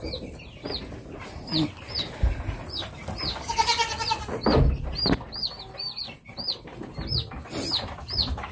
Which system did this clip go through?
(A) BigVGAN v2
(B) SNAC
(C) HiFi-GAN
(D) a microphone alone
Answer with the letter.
D